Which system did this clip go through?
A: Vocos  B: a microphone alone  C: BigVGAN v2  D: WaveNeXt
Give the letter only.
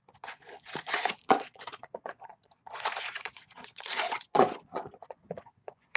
A